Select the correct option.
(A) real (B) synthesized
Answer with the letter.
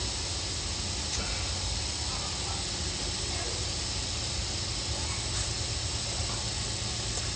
A